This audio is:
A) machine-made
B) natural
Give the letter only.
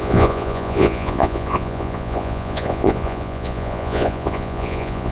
A